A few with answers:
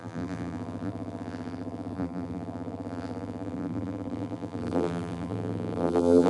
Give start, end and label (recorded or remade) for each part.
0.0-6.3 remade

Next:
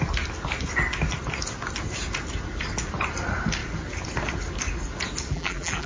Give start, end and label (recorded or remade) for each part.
0.0-5.3 recorded; 5.3-5.9 remade

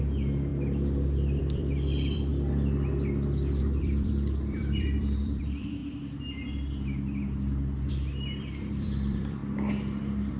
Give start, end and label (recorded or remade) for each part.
0.0-0.5 remade; 0.5-1.4 recorded; 1.4-2.3 remade; 2.3-3.6 recorded; 3.6-5.8 remade; 5.8-7.9 recorded; 7.9-9.4 remade; 9.4-10.0 recorded; 10.0-10.4 remade